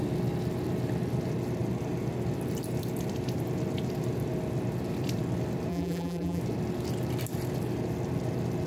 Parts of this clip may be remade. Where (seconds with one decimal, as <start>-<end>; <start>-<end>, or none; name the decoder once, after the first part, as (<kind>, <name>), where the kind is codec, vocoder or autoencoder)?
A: 5.7-6.4 (vocoder, BigVGAN v2)